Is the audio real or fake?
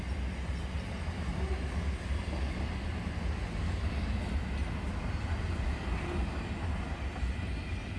real